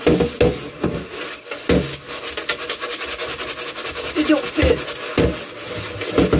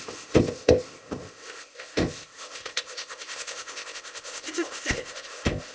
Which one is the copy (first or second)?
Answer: second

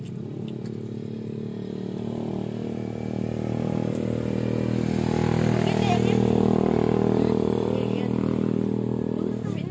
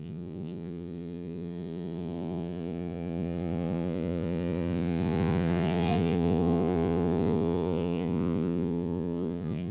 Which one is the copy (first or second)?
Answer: second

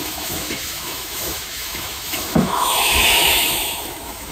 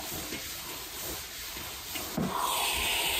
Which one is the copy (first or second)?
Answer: first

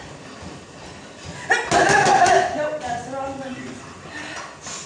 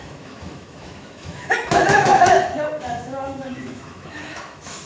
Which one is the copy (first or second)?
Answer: second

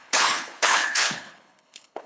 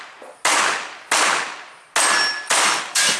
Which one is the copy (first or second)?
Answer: first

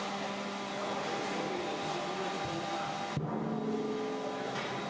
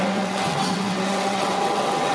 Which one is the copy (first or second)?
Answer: second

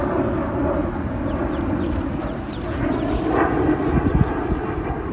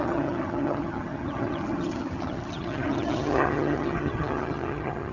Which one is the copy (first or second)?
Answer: second